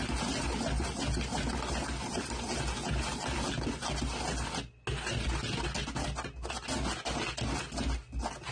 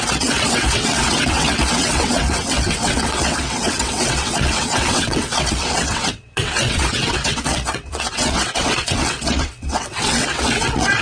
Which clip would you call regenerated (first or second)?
second